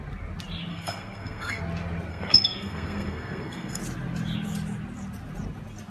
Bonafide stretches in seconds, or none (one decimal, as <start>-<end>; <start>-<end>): 0.0-0.7; 1.6-2.1; 3.8-5.9